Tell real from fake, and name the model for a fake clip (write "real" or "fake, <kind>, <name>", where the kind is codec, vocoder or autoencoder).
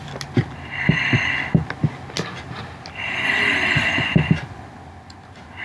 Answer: real